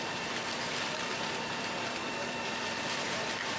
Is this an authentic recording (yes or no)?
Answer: no